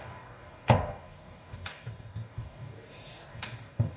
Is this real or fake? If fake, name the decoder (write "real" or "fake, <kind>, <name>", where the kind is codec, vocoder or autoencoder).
fake, codec, DAC